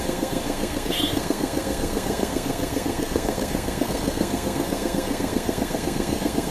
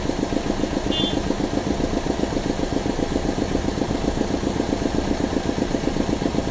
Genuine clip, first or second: second